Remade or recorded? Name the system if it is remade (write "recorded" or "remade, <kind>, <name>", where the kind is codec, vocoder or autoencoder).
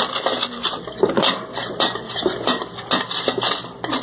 recorded